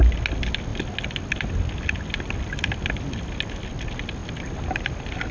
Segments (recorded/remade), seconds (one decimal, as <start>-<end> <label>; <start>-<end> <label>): 0.0-4.2 recorded; 4.2-5.3 remade